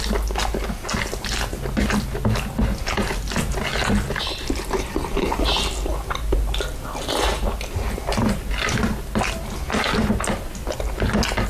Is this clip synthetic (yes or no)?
no